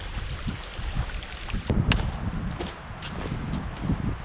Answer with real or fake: real